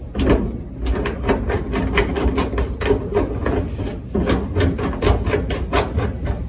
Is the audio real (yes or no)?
yes